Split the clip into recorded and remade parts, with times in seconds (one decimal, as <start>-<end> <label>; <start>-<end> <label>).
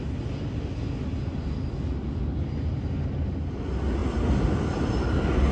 0.0-5.5 recorded